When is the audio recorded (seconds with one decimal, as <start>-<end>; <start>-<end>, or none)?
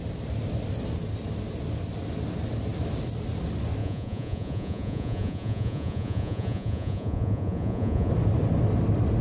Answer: 0.0-3.8; 8.1-9.2